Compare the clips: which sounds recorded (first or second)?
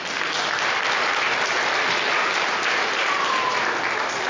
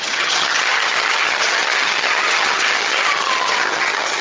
first